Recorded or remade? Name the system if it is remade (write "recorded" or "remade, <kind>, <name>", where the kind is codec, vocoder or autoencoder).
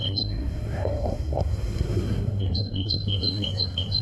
remade, codec, SNAC